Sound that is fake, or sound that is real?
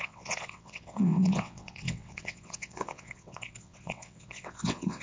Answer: fake